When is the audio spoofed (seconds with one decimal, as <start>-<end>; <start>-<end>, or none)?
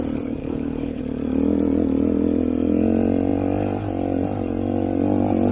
0.4-1.0